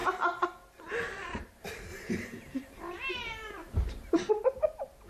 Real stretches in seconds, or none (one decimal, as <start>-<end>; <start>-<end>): 0.0-0.8